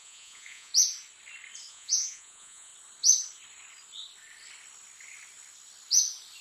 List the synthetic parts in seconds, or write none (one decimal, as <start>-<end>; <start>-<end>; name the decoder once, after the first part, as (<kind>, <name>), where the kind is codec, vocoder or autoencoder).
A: 0.0-0.7 (vocoder, Vocos); 1.7-2.7